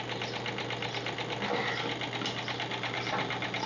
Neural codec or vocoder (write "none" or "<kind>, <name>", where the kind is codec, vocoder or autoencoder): none